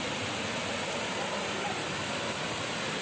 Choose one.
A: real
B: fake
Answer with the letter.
A